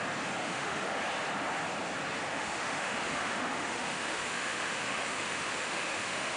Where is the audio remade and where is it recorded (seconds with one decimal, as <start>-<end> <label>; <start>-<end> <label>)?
0.0-0.4 recorded; 0.4-1.0 remade; 1.0-2.3 recorded; 2.3-6.4 remade